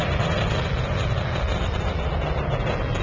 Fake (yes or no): no